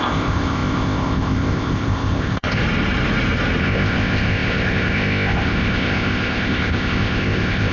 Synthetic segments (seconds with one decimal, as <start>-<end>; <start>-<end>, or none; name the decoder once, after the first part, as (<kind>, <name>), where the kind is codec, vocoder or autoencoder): 0.0-2.6 (codec, ZipCodec); 3.6-7.7